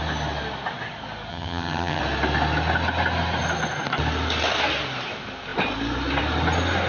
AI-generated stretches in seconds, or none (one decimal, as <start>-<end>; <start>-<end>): 1.3-2.0